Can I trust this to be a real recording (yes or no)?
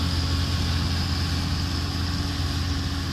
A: yes